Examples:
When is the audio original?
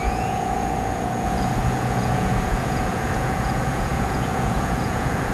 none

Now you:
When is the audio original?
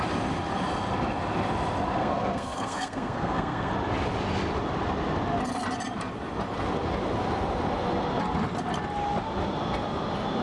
0.0-2.0; 3.7-10.4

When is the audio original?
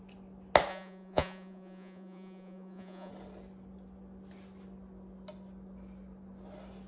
0.0-0.7; 3.1-6.9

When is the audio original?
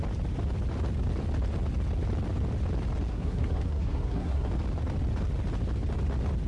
0.0-3.1; 4.5-6.5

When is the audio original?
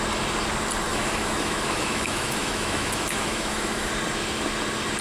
0.0-0.9; 3.9-5.0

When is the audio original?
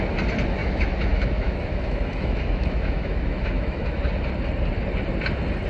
0.0-0.6; 4.0-5.7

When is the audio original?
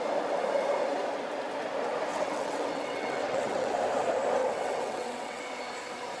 0.0-2.1; 3.8-4.4; 5.4-6.2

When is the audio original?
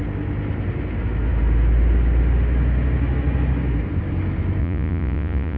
0.0-4.6